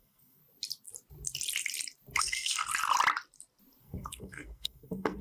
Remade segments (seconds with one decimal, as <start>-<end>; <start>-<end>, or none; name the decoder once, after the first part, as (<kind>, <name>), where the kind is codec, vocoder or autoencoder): 0.0-0.4 (codec, SNAC); 2.2-2.6; 3.8-5.2